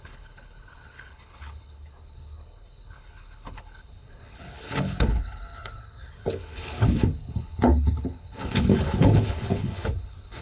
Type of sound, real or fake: fake